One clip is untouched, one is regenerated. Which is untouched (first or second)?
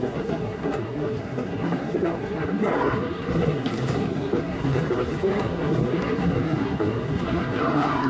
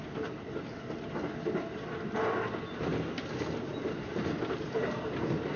second